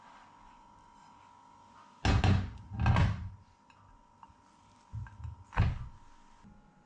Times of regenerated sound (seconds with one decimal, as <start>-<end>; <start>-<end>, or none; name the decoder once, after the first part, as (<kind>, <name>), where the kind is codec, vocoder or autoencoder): 3.0-3.6 (vocoder, BigVGAN v2)